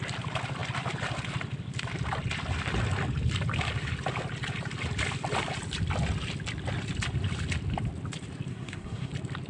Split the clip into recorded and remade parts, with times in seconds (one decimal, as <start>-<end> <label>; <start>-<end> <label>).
0.0-8.5 recorded; 8.5-9.1 remade; 9.1-9.5 recorded